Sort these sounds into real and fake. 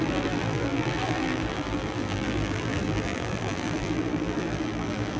fake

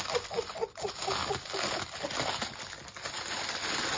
fake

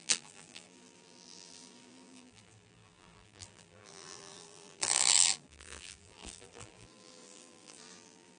fake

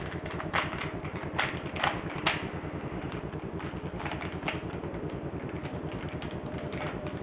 real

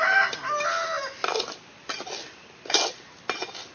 real